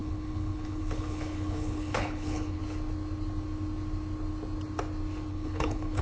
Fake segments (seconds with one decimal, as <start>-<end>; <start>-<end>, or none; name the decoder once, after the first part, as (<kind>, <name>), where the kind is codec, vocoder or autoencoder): 0.0-2.6 (codec, HILCodec); 5.3-6.0